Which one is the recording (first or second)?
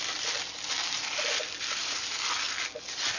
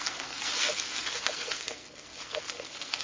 first